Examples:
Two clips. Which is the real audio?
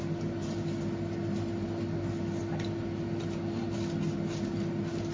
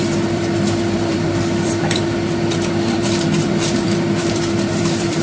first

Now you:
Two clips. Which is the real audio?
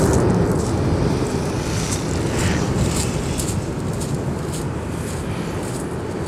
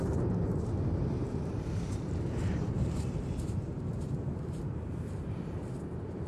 first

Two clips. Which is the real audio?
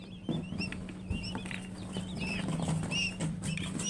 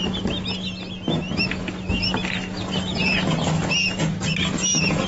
second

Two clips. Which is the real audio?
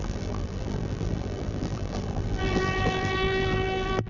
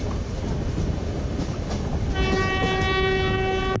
second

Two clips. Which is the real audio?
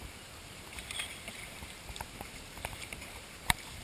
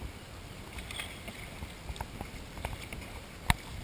second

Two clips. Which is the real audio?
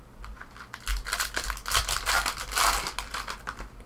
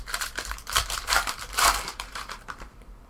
first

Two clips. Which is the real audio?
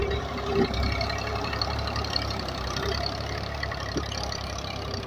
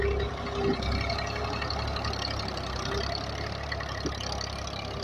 second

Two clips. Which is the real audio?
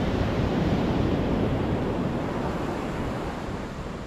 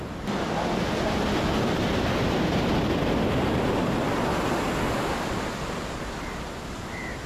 second